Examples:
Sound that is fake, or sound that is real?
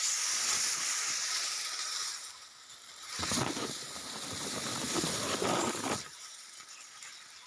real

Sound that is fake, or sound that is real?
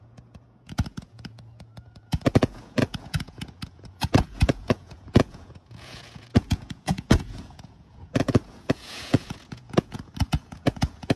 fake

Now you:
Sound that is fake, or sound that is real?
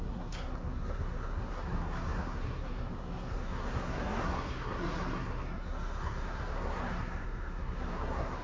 fake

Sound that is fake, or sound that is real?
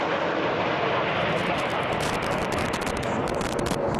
real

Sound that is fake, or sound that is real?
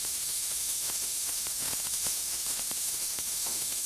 fake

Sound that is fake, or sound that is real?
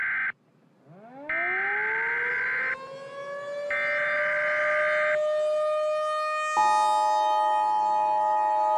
real